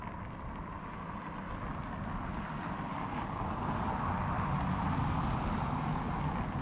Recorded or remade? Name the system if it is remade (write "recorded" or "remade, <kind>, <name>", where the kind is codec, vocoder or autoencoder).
recorded